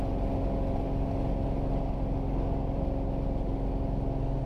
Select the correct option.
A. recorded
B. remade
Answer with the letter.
A